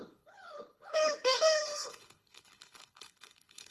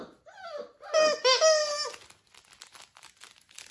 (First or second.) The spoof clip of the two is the first